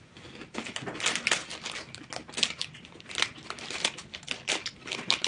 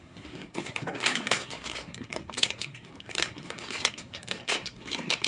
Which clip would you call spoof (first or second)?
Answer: second